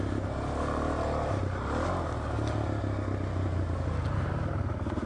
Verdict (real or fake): real